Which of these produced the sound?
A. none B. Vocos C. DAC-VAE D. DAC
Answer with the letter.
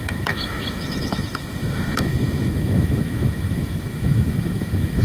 C